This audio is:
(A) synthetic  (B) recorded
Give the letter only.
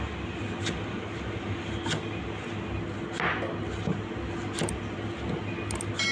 B